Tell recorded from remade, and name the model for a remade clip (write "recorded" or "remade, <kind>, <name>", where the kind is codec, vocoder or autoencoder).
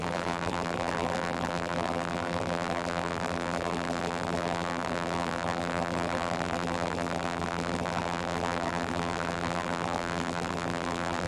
remade, vocoder, BigVGAN v2